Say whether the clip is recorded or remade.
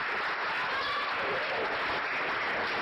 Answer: recorded